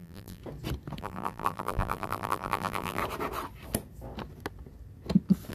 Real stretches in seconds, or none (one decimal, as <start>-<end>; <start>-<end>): 0.4-1.0; 3.0-5.5